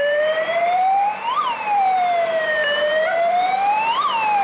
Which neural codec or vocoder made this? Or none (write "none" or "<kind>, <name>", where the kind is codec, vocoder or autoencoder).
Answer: vocoder, BigVGAN v2